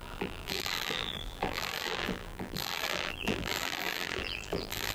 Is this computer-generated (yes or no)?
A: yes